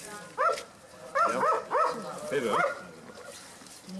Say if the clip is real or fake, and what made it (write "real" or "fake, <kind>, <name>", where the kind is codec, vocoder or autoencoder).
real